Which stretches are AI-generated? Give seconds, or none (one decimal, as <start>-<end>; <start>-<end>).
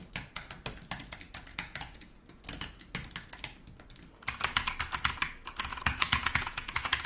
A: 1.5-2.4; 5.7-7.1